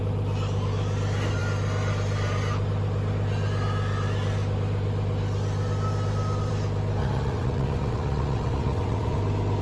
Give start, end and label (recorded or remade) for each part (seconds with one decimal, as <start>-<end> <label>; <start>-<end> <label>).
0.0-7.0 recorded; 7.0-9.2 remade; 9.2-9.6 recorded